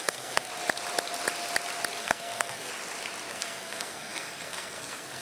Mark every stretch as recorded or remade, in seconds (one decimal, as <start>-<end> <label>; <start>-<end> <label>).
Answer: 0.0-0.5 remade; 0.5-2.0 recorded; 2.0-2.7 remade; 2.7-3.3 recorded; 3.3-5.2 remade